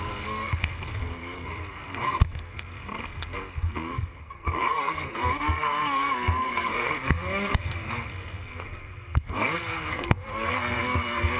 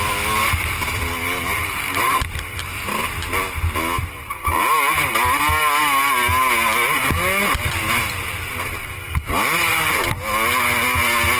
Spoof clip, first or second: first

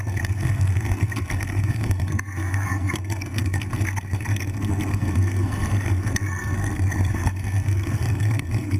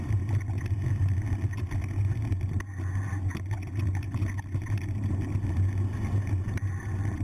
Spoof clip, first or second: first